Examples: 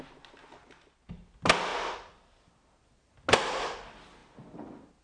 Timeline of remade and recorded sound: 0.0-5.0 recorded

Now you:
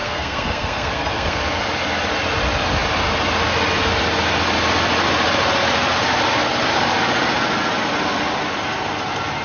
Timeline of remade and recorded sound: 0.0-1.4 remade; 1.4-9.4 recorded

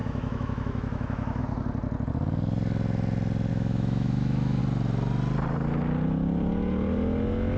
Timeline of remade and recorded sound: 0.0-1.4 remade; 1.4-3.5 recorded; 3.5-4.6 remade; 4.6-7.6 recorded

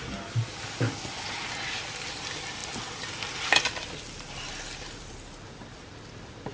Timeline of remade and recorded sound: 0.0-6.5 recorded

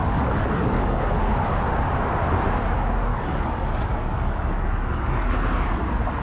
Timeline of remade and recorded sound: 0.0-1.2 remade; 1.2-3.1 recorded; 3.1-5.3 remade; 5.3-6.2 recorded